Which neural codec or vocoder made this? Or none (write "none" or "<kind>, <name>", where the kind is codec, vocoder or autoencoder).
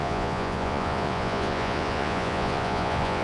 vocoder, Vocos